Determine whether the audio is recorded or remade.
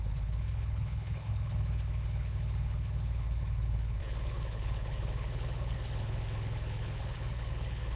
remade